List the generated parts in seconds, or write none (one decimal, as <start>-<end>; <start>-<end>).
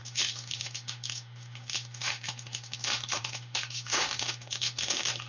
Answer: 0.0-5.3